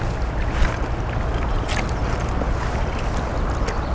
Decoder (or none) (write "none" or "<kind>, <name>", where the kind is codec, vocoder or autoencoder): none